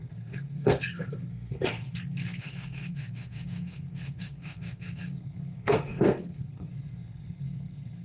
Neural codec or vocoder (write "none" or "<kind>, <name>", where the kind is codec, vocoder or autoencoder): codec, SNAC